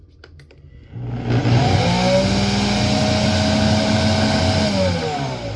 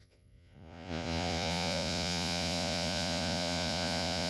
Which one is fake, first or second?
second